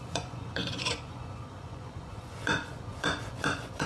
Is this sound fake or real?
fake